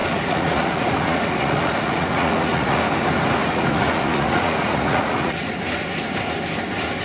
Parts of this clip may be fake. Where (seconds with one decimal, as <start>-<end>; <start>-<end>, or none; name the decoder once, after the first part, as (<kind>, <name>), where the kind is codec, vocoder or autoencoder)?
0.0-2.8 (vocoder, Vocos); 3.4-5.5